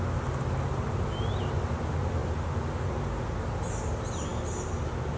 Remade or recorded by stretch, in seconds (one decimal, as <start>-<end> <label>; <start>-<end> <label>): 0.0-5.2 recorded